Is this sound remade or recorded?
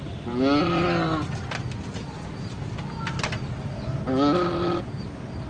recorded